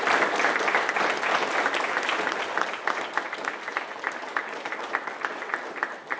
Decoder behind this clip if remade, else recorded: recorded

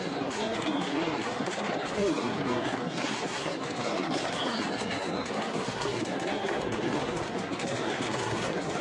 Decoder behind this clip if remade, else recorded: remade, codec, SNAC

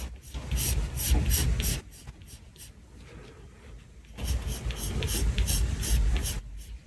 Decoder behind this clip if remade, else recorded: recorded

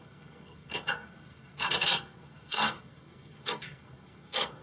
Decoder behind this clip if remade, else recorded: remade, codec, SNAC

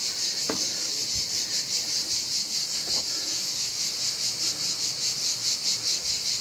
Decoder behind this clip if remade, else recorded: recorded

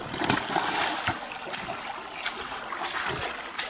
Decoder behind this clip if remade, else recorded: recorded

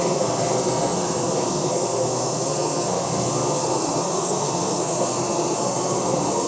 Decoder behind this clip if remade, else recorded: remade, codec, SNAC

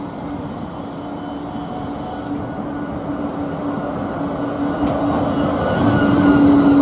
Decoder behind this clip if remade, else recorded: recorded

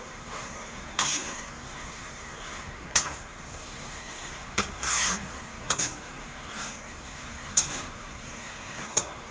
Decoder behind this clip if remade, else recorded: remade, codec, SNAC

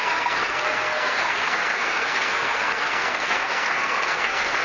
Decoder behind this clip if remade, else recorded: remade, codec, SNAC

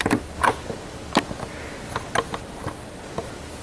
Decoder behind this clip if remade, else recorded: recorded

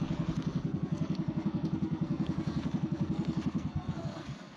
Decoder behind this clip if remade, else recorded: remade, codec, SNAC